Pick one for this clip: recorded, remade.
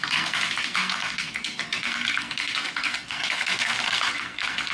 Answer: remade